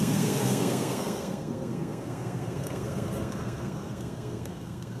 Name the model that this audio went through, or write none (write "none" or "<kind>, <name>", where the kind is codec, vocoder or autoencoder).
codec, SNAC